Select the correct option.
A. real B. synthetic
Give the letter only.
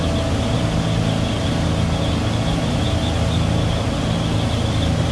A